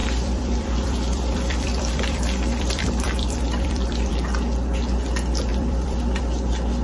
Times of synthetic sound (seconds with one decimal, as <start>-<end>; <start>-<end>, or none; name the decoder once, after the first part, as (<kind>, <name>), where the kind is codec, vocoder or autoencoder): 0.0-4.1 (vocoder, BigVGAN v2); 5.5-6.2